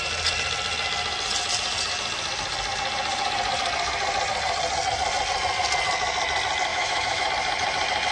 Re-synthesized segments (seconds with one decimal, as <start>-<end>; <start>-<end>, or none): 6.7-7.3